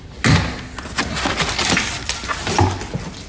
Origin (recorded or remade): recorded